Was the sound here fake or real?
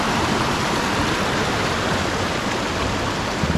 real